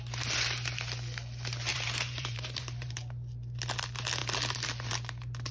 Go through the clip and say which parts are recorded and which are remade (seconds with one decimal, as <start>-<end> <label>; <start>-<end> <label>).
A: 0.0-1.7 recorded; 1.7-2.9 remade; 2.9-5.5 recorded